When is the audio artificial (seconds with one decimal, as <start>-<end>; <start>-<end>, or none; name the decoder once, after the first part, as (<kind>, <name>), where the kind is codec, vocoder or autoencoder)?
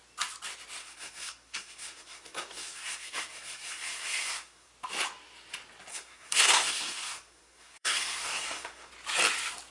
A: 0.8-4.7 (codec, SNAC); 5.9-8.9